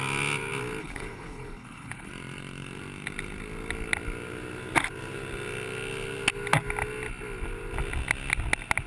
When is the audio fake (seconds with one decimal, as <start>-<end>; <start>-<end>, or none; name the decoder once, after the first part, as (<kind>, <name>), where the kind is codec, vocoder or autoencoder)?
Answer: 0.8-2.1 (codec, HILCodec)